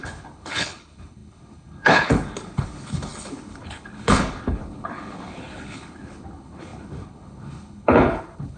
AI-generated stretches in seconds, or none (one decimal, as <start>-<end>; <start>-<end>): 0.0-8.6